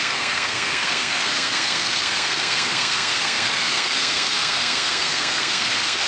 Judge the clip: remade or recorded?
remade